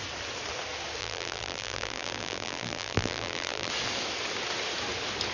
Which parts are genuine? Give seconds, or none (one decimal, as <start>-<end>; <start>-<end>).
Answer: 0.0-1.0; 3.7-5.3